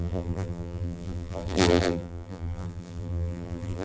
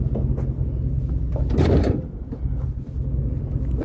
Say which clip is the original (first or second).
second